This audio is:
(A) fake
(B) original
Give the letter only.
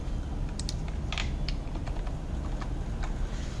B